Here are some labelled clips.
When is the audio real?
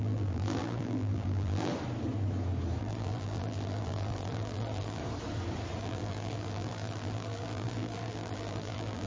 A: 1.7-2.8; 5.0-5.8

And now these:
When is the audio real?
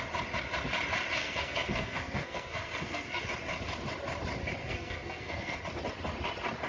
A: 0.0-1.2; 3.2-4.6; 5.6-6.7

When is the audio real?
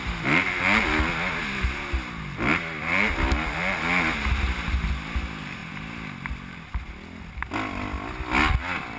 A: 0.0-9.0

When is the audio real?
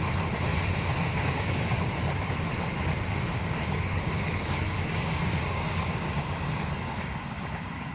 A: 0.0-0.9; 1.9-3.1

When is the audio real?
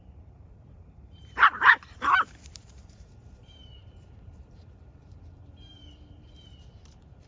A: none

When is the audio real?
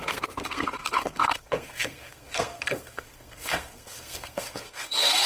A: none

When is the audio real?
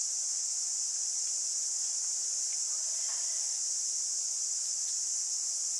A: 0.0-5.8